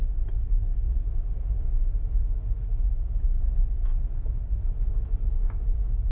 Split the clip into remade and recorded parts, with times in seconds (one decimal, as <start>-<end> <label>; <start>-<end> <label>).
0.0-6.1 recorded